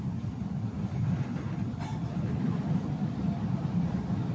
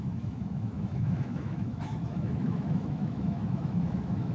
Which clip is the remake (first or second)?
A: second